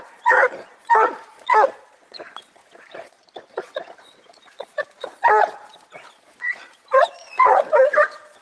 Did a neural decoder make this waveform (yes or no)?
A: yes